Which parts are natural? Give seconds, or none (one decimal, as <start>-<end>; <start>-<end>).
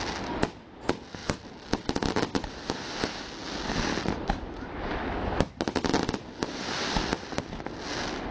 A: 0.0-8.3